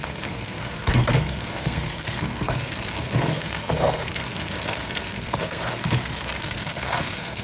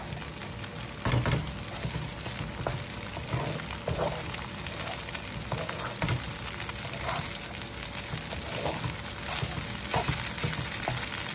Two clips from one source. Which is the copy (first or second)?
first